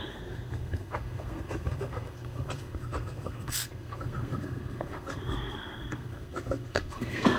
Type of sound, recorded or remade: remade